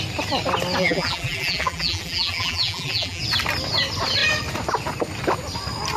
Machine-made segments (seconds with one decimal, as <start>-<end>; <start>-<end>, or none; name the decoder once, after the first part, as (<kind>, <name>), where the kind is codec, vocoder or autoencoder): 0.8-3.2 (vocoder, BigVGAN v2)